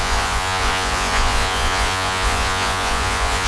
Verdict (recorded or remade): remade